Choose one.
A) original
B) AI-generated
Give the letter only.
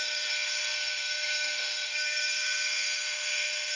B